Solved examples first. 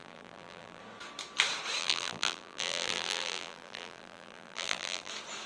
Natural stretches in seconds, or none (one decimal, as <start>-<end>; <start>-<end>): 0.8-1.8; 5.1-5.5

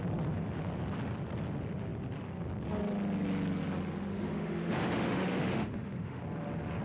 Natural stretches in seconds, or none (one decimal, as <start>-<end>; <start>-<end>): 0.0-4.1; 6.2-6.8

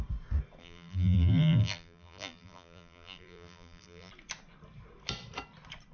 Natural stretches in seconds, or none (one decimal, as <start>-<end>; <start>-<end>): 0.0-0.6; 4.1-5.9

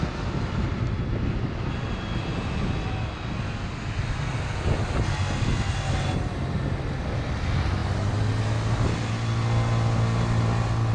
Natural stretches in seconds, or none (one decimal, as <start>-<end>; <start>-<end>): 0.0-10.9

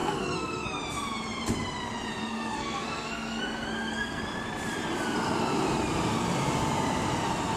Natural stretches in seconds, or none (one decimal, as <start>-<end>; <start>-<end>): 0.8-2.2; 4.2-7.6